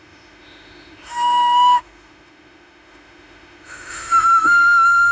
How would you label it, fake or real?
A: fake